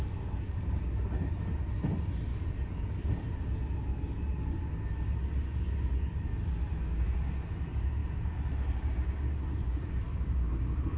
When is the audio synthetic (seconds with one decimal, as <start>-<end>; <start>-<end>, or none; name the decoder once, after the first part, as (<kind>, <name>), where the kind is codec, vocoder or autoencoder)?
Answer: 0.0-0.6 (codec, DAC); 2.3-2.8